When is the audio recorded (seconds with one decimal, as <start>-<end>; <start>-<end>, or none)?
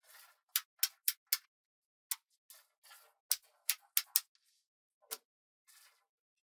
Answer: 0.0-6.4